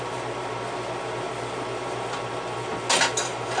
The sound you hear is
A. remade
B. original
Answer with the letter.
B